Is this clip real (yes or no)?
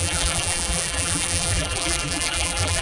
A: no